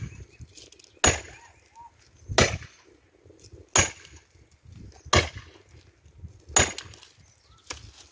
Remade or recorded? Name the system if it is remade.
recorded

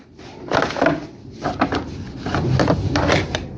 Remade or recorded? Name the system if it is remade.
recorded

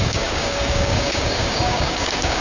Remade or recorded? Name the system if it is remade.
remade, codec, DAC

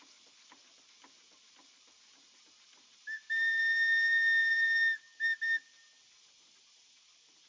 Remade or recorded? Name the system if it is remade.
recorded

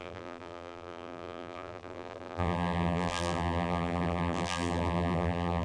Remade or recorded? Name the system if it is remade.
remade, vocoder, BigVGAN v2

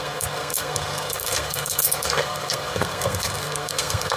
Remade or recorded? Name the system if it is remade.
remade, codec, SNAC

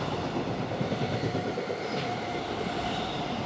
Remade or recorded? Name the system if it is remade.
recorded